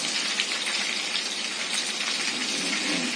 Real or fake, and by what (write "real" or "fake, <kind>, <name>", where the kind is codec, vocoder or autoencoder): real